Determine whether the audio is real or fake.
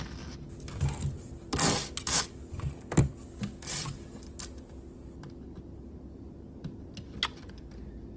real